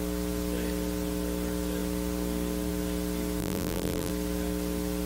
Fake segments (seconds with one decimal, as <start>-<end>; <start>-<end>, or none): 3.4-4.1